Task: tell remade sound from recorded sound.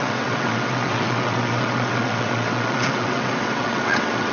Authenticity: remade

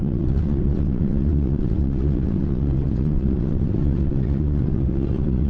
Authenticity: remade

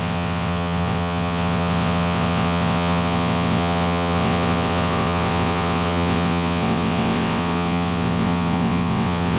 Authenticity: remade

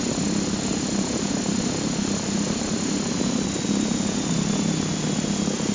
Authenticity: recorded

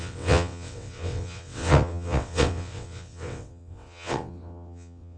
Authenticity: remade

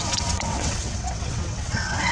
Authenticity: remade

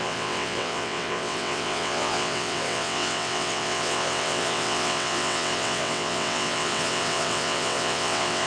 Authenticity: remade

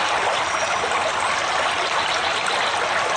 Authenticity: recorded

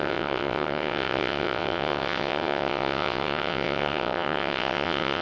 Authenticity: remade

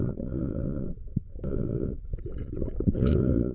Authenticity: remade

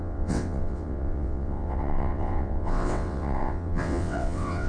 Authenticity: remade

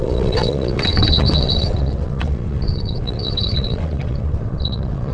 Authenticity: remade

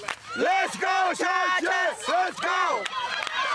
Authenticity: recorded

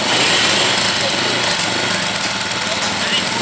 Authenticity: recorded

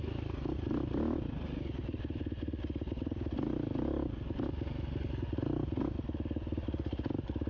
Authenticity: recorded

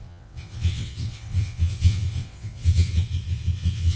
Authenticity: remade